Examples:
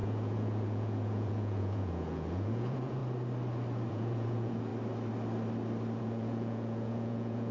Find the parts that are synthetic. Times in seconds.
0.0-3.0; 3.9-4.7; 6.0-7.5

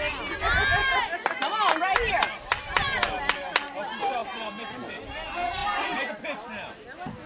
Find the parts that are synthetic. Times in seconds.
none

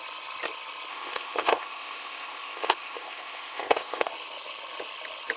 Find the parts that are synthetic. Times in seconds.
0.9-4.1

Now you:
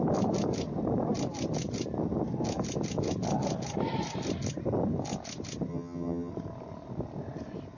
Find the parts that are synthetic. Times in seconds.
5.7-6.3

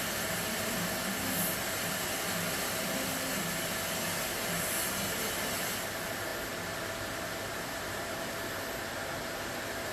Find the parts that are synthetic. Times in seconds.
none